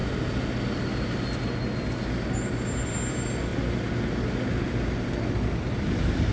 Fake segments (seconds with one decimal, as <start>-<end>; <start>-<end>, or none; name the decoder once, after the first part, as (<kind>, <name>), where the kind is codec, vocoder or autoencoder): none